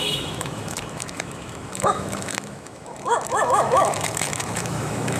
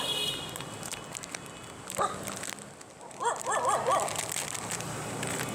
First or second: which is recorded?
second